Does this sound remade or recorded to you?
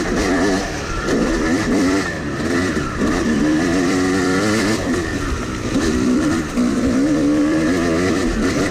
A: remade